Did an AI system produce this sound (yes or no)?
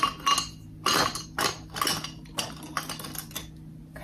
no